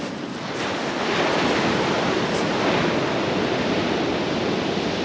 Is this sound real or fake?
real